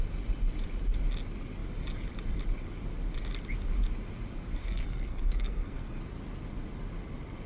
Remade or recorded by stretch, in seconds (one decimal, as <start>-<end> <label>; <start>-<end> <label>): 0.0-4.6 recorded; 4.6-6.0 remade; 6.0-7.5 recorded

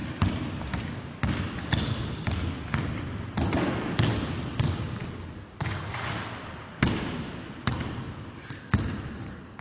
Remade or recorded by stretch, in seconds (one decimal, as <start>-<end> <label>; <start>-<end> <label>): 0.0-1.0 remade; 1.0-9.6 recorded

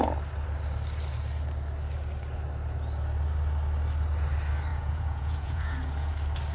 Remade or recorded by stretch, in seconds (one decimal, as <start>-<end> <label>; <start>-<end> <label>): 0.0-4.7 recorded; 4.7-6.1 remade; 6.1-6.5 recorded

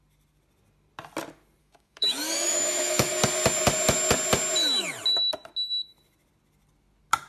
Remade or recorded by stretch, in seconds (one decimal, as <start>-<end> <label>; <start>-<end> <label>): 0.0-1.6 recorded; 1.6-3.1 remade; 3.1-7.3 recorded

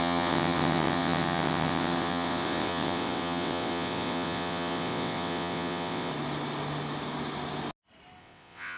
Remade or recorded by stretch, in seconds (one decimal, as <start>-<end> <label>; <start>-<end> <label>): 0.0-6.1 remade; 6.1-8.2 recorded; 8.2-8.8 remade

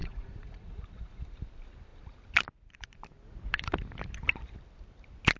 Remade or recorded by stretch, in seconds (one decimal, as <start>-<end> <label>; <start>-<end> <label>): 0.0-1.2 remade; 1.2-5.4 recorded

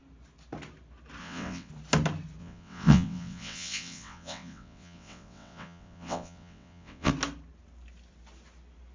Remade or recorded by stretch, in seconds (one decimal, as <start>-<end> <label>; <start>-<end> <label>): 0.0-1.2 recorded; 1.2-1.7 remade; 1.7-2.4 recorded; 2.4-7.1 remade; 7.1-8.9 recorded

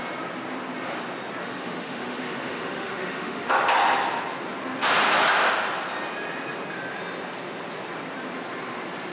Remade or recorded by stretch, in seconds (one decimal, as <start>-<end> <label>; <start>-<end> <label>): 0.0-1.4 recorded; 1.4-3.5 remade; 3.5-9.1 recorded